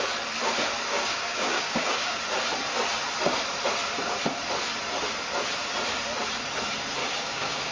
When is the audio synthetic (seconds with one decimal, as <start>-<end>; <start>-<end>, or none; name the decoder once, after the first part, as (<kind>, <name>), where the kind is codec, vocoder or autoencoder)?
0.9-2.2 (codec, DAC); 7.0-7.7